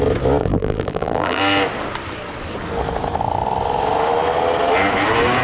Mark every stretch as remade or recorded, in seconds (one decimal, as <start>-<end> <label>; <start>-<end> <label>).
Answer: 0.0-0.4 recorded; 0.4-1.4 remade; 1.4-5.4 recorded